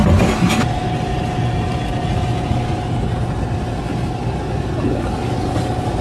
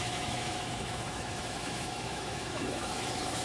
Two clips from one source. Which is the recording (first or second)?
first